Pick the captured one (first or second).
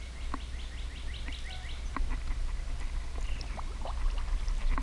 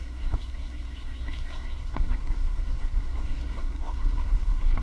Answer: first